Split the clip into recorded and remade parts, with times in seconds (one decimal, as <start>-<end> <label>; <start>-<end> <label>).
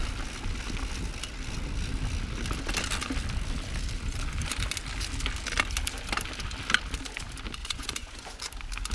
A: 0.0-7.6 recorded; 7.6-8.4 remade; 8.4-8.9 recorded